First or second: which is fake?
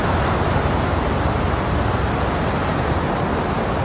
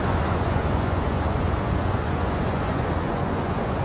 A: second